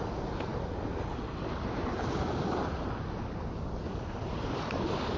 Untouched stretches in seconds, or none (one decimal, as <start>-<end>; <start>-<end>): 0.0-5.2